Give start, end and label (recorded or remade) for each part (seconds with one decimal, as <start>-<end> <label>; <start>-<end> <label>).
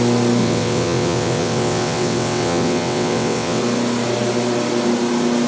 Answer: 0.0-0.4 recorded; 0.4-3.6 remade; 3.6-5.5 recorded